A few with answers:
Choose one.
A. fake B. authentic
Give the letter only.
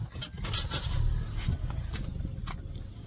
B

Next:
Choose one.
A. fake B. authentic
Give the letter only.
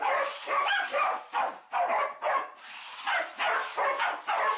B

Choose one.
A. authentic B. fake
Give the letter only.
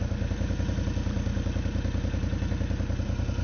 A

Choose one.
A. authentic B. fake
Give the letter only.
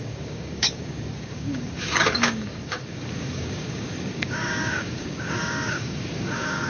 B